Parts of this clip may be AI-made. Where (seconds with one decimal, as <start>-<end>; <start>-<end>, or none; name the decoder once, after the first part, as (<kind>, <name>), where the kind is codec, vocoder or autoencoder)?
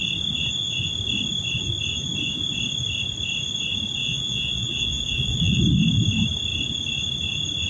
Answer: 4.0-5.6 (vocoder, Vocos)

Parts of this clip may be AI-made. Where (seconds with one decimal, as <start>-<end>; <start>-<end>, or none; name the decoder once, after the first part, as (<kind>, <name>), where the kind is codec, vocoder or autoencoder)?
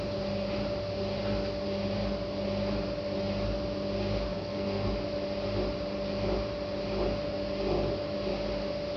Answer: 4.3-4.9 (codec, SNAC)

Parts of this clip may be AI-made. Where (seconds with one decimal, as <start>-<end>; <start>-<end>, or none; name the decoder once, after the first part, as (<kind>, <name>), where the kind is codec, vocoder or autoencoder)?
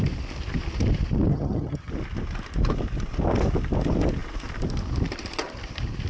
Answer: 1.3-1.9 (vocoder, HiFi-GAN)